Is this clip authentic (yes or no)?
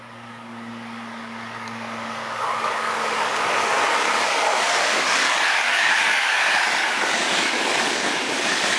no